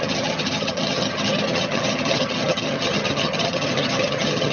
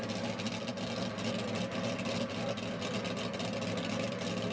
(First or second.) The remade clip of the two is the first